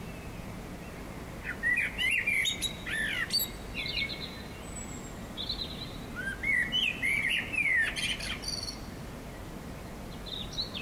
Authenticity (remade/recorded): recorded